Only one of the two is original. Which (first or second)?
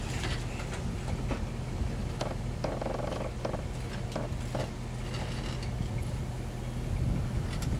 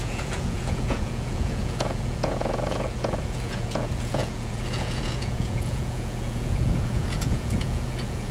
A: first